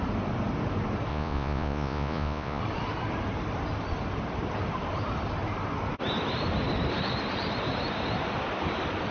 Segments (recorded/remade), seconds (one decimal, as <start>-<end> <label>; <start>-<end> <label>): 0.0-1.1 recorded; 1.1-2.6 remade; 2.6-9.1 recorded